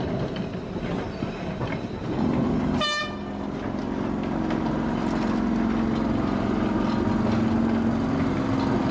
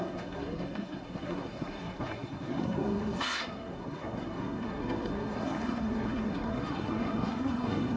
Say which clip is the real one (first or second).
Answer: first